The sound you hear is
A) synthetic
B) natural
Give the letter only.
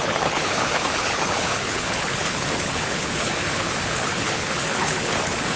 A